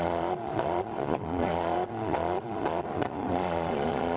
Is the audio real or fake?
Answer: fake